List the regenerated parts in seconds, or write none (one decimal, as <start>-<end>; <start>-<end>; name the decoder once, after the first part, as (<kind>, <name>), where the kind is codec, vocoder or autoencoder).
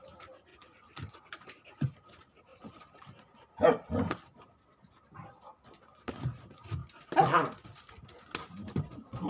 none